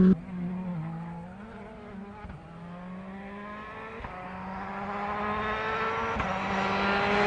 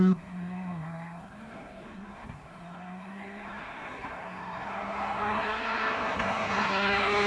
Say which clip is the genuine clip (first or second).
first